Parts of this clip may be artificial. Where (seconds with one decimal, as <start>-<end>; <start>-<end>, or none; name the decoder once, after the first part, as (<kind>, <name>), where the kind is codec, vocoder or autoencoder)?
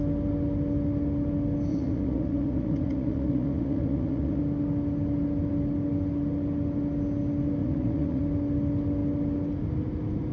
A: 1.7-4.4 (vocoder, Vocos); 7.6-8.2